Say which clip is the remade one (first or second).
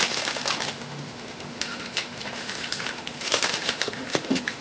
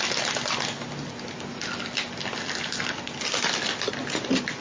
first